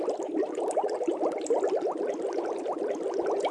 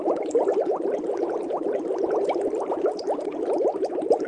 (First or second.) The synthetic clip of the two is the second